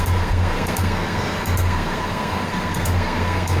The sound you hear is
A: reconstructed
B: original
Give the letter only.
A